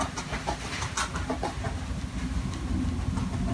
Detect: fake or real real